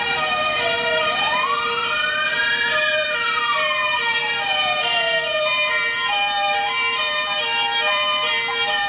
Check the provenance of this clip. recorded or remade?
remade